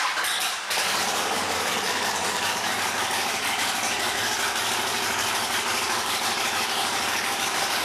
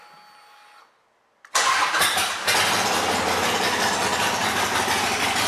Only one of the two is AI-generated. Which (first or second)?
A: first